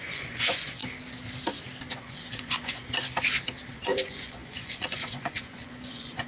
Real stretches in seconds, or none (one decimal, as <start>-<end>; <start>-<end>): 0.8-2.0; 2.8-3.7